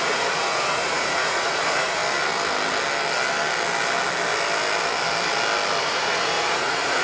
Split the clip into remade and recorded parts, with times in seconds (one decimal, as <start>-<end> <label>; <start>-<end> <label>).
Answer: 0.0-2.0 remade; 2.0-5.8 recorded; 5.8-7.0 remade